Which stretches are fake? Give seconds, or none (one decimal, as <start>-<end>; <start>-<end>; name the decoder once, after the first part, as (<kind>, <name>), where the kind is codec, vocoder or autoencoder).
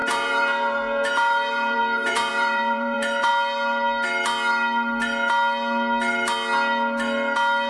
0.0-3.3 (vocoder, Vocos)